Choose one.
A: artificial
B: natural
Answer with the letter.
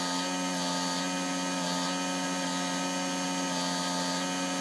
B